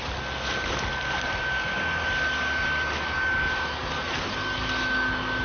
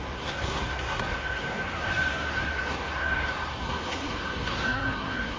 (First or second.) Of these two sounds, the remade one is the second